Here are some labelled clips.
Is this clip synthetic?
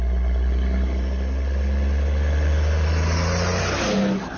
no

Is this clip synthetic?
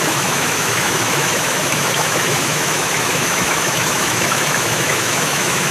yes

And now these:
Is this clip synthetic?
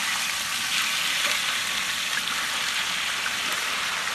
no